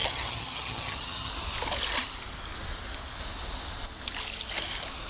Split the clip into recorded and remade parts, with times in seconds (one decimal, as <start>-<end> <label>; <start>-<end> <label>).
0.0-1.3 remade; 1.3-5.1 recorded